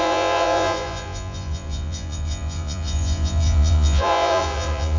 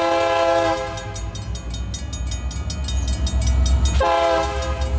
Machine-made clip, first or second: first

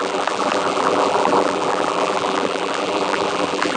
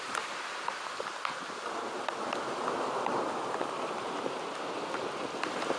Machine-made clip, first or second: first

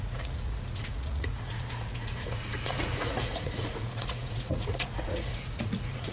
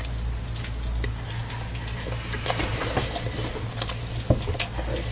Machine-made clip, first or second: first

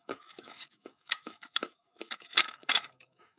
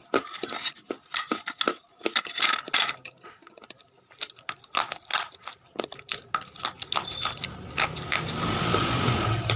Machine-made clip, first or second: first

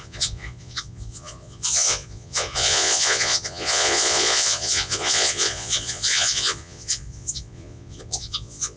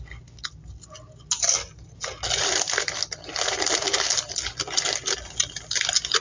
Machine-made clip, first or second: first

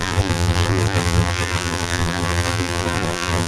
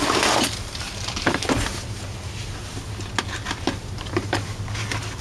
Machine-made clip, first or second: first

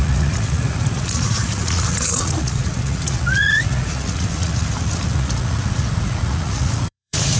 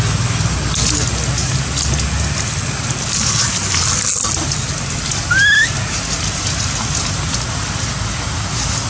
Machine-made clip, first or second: first